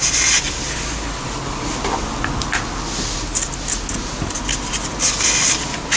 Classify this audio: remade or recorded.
recorded